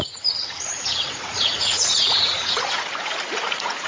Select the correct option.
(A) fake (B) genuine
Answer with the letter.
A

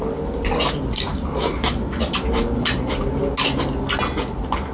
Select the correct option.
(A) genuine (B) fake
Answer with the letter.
A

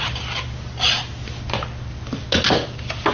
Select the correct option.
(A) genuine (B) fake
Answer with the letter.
A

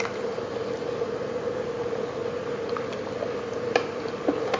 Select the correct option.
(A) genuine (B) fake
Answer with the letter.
A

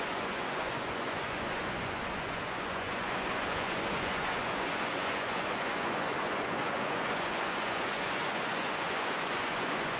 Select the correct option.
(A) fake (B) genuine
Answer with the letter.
A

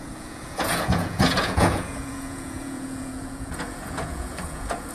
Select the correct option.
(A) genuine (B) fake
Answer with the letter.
B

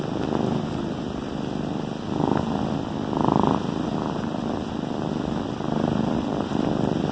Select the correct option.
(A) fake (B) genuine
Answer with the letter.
B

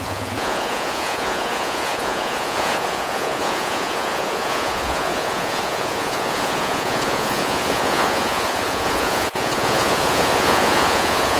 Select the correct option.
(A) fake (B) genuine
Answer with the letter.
A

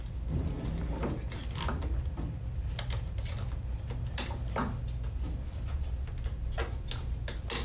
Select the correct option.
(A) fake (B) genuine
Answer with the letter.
B